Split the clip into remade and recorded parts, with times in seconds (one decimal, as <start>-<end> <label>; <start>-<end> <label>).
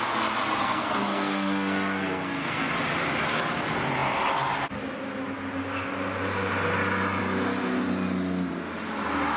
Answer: 0.0-0.6 recorded; 0.6-2.7 remade; 2.7-9.4 recorded